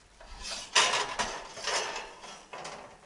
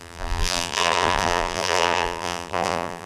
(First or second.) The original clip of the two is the first